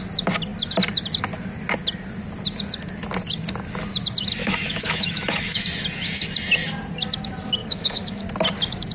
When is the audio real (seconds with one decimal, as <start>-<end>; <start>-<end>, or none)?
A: 0.0-4.4; 5.6-7.6; 8.2-8.9